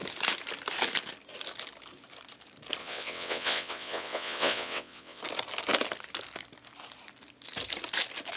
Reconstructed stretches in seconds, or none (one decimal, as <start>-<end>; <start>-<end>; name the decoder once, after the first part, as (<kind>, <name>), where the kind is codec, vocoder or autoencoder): 2.8-5.2 (vocoder, WaveNeXt)